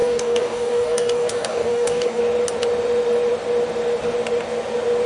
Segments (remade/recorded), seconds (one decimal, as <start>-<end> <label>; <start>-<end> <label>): 0.0-2.2 remade; 2.2-5.1 recorded